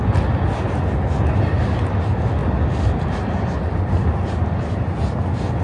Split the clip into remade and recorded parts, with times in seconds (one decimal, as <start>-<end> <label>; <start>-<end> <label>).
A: 0.0-5.6 recorded